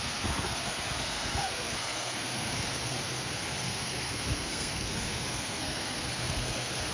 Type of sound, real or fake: fake